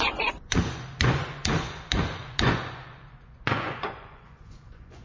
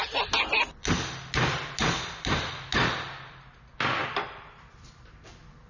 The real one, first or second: second